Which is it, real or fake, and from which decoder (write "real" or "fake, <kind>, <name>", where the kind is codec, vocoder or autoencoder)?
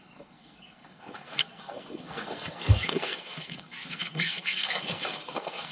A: fake, codec, SNAC